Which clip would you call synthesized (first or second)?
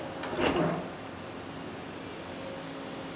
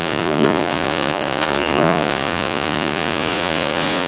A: second